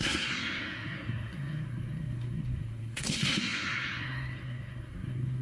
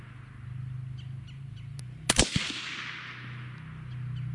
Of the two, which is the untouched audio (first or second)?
second